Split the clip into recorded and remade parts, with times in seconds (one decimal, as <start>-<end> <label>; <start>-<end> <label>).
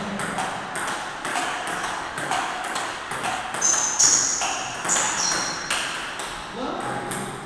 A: 0.0-1.3 recorded; 1.3-3.4 remade; 3.4-7.5 recorded